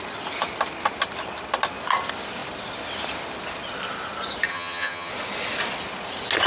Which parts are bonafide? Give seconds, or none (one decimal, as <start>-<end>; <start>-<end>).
0.0-4.5; 5.1-6.5

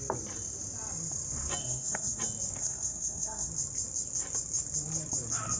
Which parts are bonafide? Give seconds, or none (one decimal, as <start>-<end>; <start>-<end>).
0.0-1.6; 2.2-2.6; 3.5-5.6

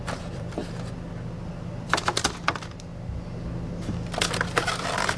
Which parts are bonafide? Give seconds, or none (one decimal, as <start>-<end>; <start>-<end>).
0.6-1.5; 2.9-4.4

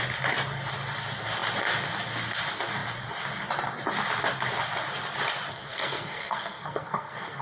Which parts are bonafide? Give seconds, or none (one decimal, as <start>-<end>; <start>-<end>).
0.0-5.5